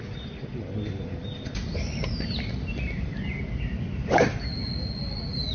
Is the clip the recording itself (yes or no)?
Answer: yes